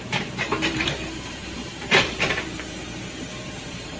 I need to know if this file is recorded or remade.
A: remade